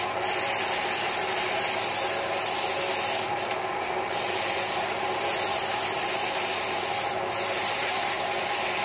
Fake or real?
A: real